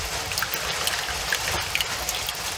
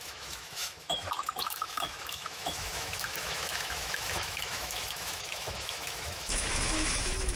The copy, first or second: second